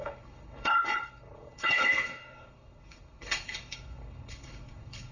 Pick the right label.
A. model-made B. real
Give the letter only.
A